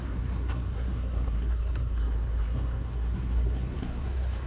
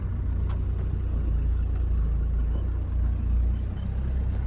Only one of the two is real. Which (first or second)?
second